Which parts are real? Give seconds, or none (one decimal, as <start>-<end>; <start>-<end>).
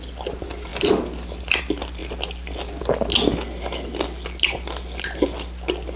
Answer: 0.0-6.0